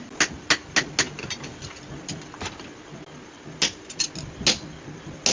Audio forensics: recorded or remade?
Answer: recorded